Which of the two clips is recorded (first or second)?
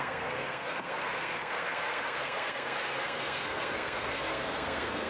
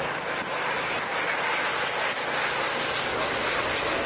second